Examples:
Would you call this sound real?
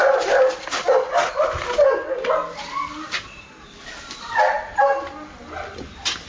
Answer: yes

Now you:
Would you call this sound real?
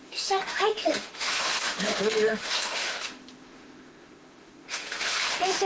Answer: no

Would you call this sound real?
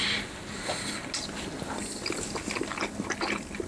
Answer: yes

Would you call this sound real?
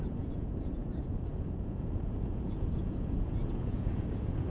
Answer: no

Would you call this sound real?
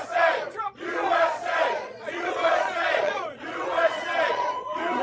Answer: no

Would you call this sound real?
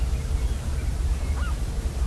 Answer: yes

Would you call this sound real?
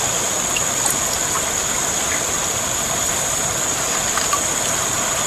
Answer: yes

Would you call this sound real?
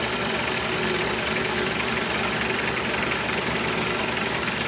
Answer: yes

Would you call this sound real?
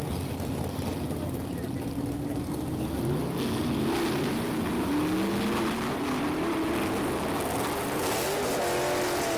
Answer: yes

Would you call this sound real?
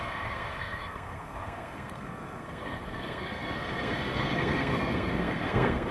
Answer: no